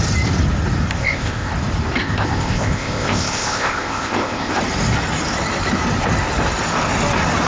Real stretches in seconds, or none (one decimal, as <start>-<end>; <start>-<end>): 0.0-1.0; 1.5-2.0; 4.6-7.5